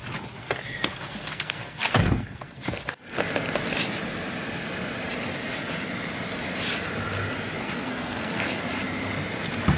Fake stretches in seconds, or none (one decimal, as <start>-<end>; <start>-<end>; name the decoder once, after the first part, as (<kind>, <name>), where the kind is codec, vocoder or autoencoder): 0.4-3.2 (codec, SNAC); 7.6-8.6